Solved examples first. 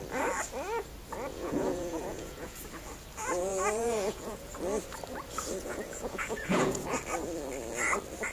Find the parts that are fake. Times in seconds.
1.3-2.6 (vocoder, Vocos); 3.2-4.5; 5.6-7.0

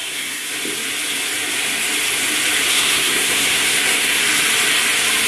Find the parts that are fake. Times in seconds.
0.0-0.5 (codec, SNAC); 2.7-4.2

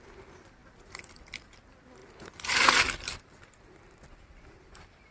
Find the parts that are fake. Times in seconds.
none